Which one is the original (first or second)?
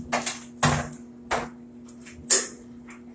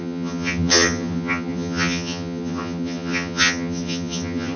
first